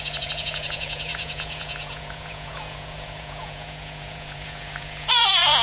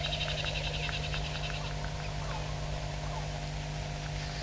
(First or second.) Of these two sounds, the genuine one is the second